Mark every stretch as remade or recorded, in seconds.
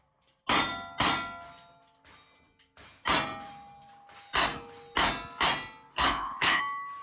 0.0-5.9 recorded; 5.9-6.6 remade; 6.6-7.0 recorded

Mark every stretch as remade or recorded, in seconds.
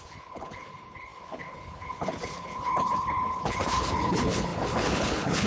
0.0-5.5 remade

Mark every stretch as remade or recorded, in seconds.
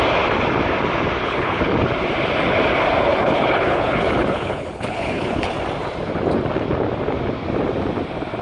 0.0-1.2 recorded; 1.2-1.7 remade; 1.7-3.1 recorded; 3.1-5.5 remade; 5.5-8.4 recorded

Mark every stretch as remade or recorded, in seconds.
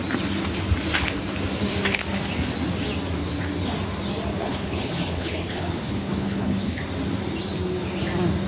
0.0-4.3 recorded; 4.3-6.8 remade; 6.8-8.5 recorded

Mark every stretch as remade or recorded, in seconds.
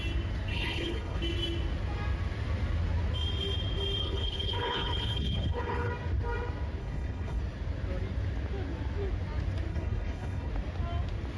0.0-0.5 recorded; 0.5-1.2 remade; 1.2-4.0 recorded; 4.0-5.9 remade; 5.9-6.8 recorded; 6.8-7.4 remade; 7.4-9.7 recorded; 9.7-10.5 remade; 10.5-11.4 recorded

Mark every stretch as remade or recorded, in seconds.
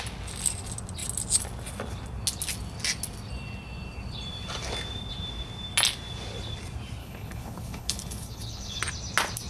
0.0-7.0 recorded; 7.0-8.8 remade; 8.8-9.5 recorded